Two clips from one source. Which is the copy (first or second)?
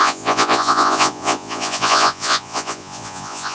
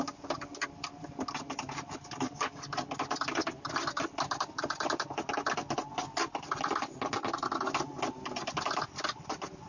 first